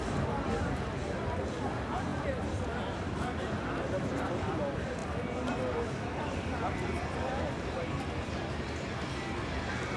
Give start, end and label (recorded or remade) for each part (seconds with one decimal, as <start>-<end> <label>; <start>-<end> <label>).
0.0-10.0 recorded